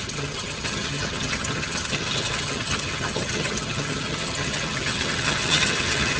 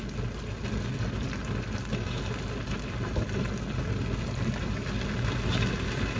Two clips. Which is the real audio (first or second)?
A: second